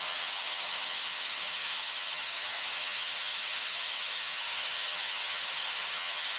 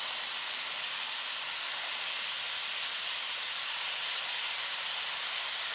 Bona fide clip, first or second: second